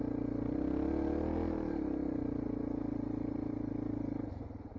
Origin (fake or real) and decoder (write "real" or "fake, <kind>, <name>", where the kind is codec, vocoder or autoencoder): real